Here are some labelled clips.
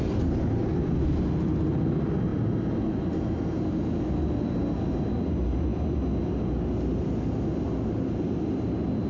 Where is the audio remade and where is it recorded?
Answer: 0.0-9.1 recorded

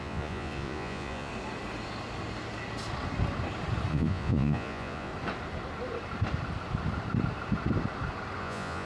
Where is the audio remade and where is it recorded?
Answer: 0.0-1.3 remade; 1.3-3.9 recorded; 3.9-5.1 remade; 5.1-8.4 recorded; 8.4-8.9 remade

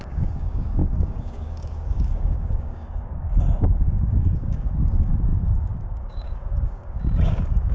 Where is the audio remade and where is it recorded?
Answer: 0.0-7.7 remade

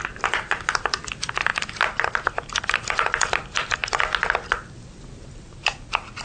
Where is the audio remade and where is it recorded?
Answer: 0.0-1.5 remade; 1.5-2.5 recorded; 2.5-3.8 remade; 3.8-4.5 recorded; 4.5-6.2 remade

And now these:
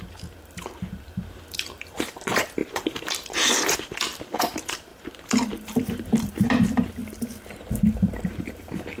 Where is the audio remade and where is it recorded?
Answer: 0.0-7.0 remade; 7.0-7.9 recorded; 7.9-9.0 remade

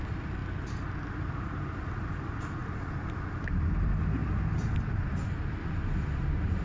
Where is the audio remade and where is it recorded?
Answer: 0.0-0.4 remade; 0.4-1.1 recorded; 1.1-2.6 remade; 2.6-3.1 recorded; 3.1-6.6 remade